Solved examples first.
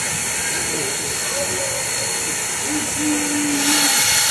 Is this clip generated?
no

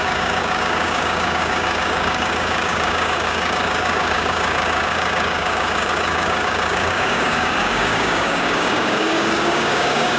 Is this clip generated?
yes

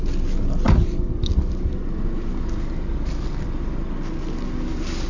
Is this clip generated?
no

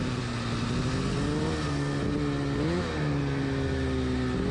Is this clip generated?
no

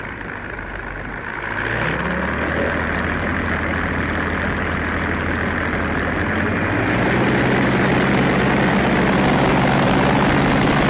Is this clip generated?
no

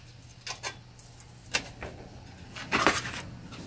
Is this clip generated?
no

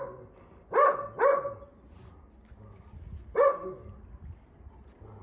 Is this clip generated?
no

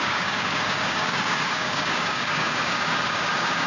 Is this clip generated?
yes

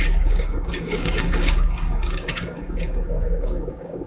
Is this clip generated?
yes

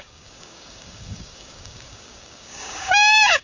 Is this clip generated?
yes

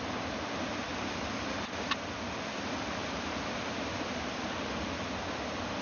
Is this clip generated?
no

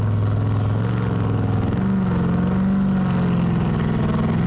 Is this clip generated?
no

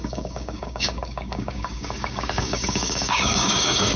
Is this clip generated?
yes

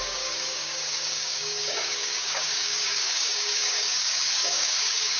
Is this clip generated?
yes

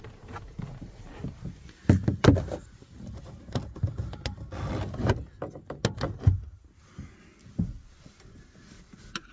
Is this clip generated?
no